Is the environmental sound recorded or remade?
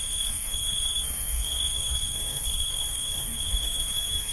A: remade